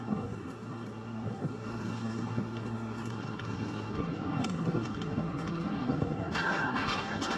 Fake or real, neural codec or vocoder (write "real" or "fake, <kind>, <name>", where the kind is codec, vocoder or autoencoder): fake, codec, SNAC